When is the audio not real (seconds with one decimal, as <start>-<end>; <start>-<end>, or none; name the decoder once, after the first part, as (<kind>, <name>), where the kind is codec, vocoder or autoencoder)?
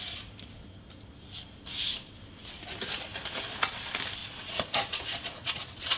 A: 4.2-6.0 (vocoder, Vocos)